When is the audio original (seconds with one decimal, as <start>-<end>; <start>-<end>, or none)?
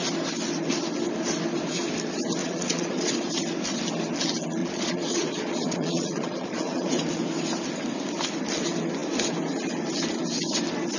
0.0-2.4; 3.3-4.6; 6.9-11.0